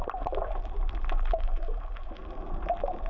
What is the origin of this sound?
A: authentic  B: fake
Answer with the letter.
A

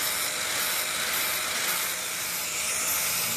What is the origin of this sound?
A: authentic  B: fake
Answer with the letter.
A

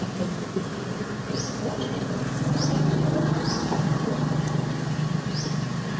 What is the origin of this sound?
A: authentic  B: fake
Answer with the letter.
A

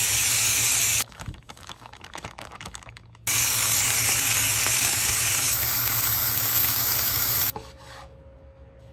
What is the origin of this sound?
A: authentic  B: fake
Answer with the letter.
B